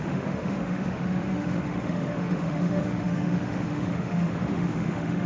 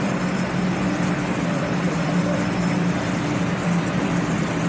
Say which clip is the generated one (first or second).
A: first